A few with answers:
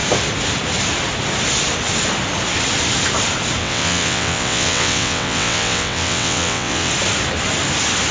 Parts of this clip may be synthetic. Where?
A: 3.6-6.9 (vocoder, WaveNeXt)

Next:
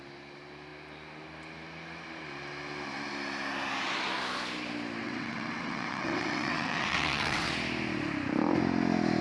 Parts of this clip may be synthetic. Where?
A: 5.0-7.5 (vocoder, WaveNeXt)